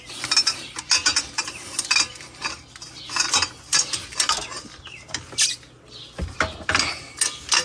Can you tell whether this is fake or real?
real